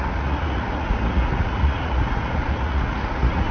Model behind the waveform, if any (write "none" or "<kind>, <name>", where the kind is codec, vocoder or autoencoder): vocoder, Vocos